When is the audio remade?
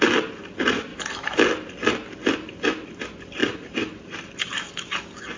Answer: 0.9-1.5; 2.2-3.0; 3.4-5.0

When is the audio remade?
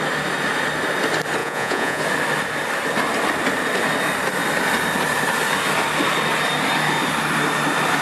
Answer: 1.4-2.0